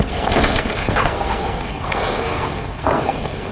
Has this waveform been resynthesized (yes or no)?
yes